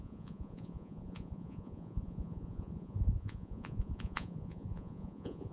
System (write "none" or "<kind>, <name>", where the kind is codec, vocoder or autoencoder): vocoder, Vocos